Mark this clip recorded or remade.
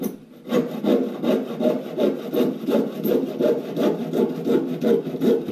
recorded